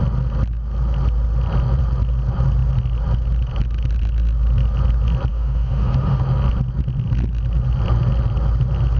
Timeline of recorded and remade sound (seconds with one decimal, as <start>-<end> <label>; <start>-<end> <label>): 0.0-5.3 recorded; 5.3-6.2 remade; 6.2-9.0 recorded